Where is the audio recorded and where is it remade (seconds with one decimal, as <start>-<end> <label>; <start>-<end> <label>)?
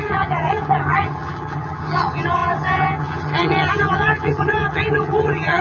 0.0-5.6 remade